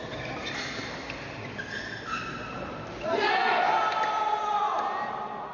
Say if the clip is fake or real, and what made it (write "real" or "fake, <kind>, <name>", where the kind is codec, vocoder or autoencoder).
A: real